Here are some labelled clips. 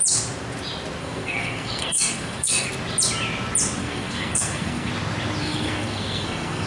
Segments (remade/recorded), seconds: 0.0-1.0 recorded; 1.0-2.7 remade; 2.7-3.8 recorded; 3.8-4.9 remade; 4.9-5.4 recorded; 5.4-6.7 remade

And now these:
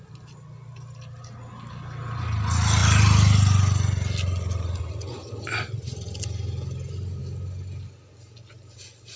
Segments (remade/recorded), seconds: 0.0-9.2 recorded

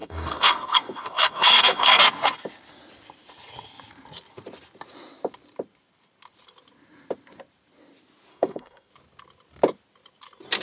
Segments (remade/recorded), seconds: 0.0-2.0 remade; 2.0-8.3 recorded; 8.3-8.9 remade; 8.9-10.6 recorded

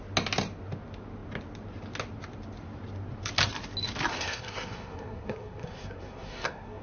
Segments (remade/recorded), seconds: 0.0-4.1 recorded; 4.1-6.8 remade

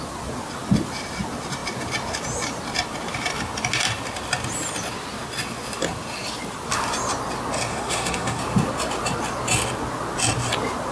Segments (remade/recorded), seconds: 0.0-7.7 recorded; 7.7-8.4 remade; 8.4-10.9 recorded

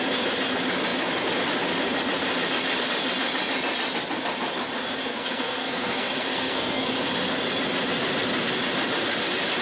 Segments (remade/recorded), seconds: 0.0-5.1 recorded; 5.1-6.9 remade; 6.9-9.6 recorded

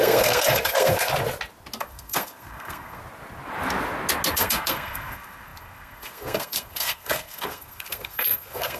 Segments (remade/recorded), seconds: 0.0-1.1 remade; 1.1-1.8 recorded; 1.8-3.0 remade; 3.0-4.3 recorded; 4.3-8.8 remade